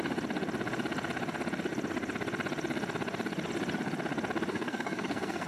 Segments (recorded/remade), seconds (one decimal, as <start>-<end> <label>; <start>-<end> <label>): 0.0-4.5 recorded; 4.5-5.5 remade